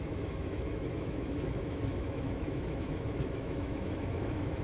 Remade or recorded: remade